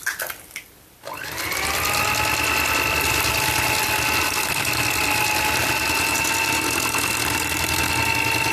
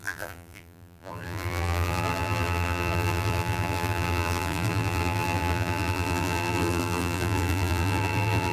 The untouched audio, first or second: first